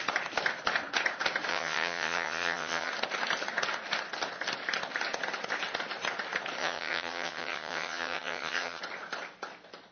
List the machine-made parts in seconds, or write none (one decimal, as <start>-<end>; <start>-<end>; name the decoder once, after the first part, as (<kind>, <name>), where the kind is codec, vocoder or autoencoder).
1.5-2.9 (vocoder, HiFi-GAN); 6.6-8.8